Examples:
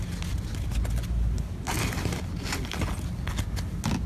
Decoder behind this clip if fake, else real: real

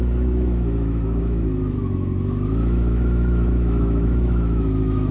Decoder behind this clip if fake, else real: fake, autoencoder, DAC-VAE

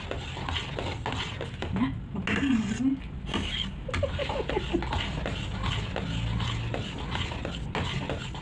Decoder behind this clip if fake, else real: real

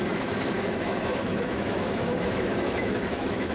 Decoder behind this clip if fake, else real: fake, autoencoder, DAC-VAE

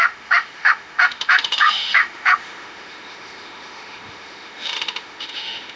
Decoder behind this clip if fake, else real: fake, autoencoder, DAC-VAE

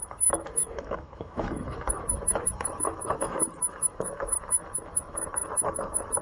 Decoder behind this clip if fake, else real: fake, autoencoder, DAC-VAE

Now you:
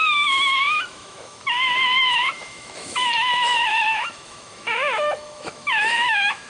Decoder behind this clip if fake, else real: fake, autoencoder, DAC-VAE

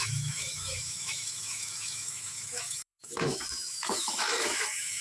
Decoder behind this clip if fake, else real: fake, autoencoder, DAC-VAE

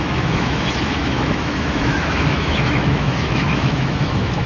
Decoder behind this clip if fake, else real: fake, autoencoder, DAC-VAE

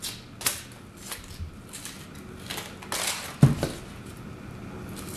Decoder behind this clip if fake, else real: real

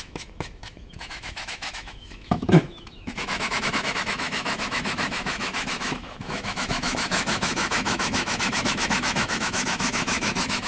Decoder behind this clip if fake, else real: fake, autoencoder, DAC-VAE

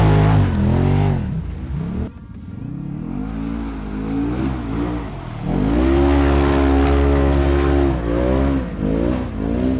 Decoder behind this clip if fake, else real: real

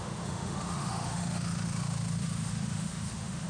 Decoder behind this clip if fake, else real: fake, autoencoder, DAC-VAE